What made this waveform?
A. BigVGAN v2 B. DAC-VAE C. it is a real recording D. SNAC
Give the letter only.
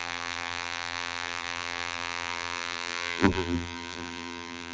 A